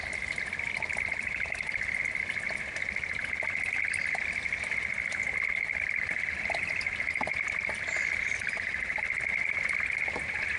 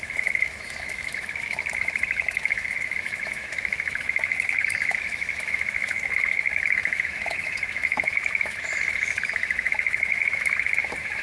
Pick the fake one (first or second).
second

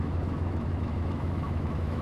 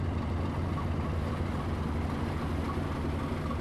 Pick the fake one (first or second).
first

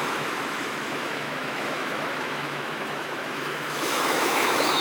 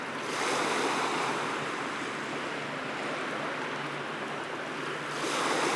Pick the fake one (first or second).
first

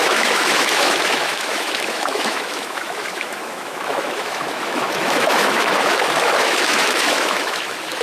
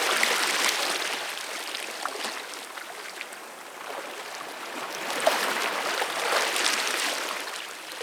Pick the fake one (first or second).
first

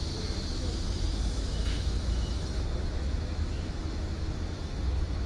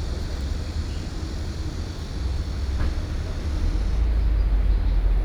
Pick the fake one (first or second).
first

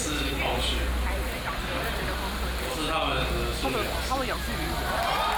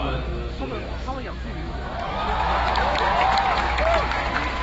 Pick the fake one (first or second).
second